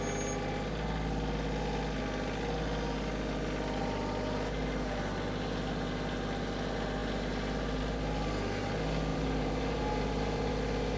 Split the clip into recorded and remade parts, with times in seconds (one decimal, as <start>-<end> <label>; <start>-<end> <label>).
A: 0.0-9.1 recorded; 9.1-10.5 remade; 10.5-11.0 recorded